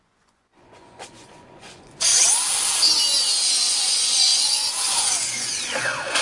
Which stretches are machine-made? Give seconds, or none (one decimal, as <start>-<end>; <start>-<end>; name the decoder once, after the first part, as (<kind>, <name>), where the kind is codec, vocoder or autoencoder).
0.0-2.1 (vocoder, Vocos); 3.6-6.2